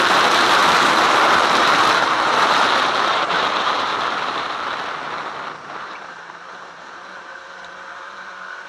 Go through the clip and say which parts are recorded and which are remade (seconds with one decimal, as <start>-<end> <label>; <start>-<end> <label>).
0.0-3.9 remade; 3.9-5.8 recorded; 5.8-8.7 remade